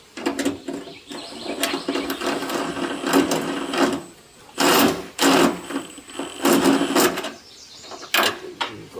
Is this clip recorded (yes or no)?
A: yes